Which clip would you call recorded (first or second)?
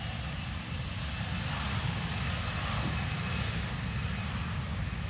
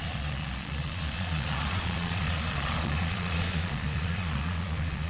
first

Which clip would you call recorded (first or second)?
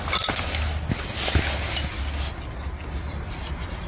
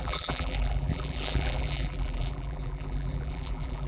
first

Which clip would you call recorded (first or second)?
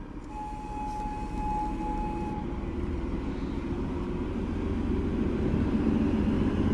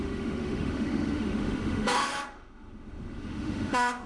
first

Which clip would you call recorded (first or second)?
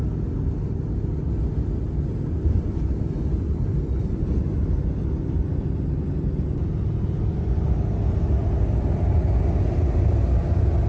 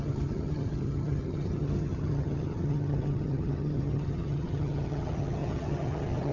first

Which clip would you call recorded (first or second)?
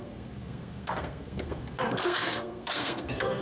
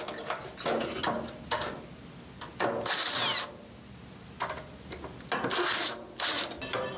second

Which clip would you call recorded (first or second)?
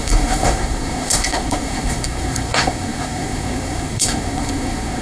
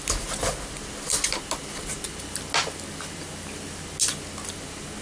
second